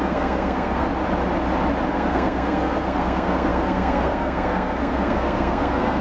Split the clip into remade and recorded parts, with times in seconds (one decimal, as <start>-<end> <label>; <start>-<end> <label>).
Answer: 0.0-0.9 remade; 0.9-1.9 recorded; 1.9-6.0 remade